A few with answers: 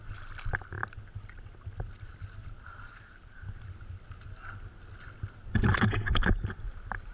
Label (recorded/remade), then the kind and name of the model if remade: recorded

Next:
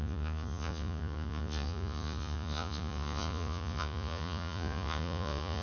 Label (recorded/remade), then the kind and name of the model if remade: remade, vocoder, Vocos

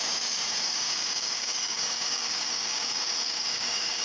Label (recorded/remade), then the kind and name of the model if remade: remade, codec, DAC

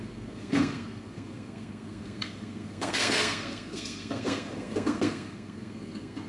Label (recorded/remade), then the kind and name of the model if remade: remade, codec, SNAC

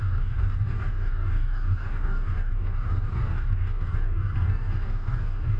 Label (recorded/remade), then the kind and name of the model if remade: remade, codec, DAC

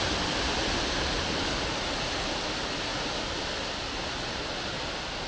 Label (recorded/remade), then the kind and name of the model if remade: recorded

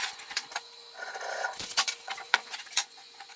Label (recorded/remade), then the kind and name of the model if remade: remade, vocoder, Vocos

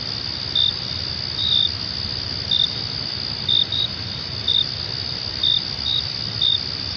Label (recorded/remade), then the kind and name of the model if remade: recorded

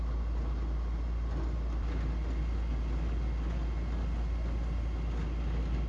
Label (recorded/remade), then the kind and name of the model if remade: recorded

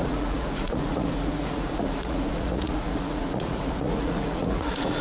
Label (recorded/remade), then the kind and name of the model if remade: remade, vocoder, Vocos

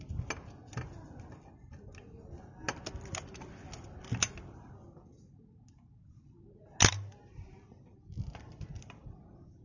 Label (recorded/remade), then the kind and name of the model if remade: recorded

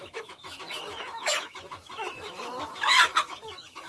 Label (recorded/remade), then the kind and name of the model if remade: remade, autoencoder, DAC-VAE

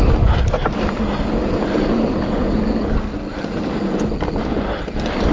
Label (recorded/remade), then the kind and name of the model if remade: recorded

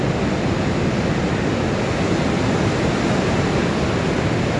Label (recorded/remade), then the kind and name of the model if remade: recorded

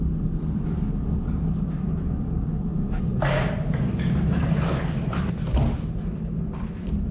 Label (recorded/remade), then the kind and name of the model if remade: recorded